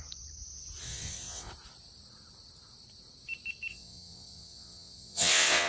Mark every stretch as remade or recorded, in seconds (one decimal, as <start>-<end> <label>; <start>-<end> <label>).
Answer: 0.0-0.8 recorded; 0.8-1.5 remade; 1.5-3.7 recorded; 3.7-5.7 remade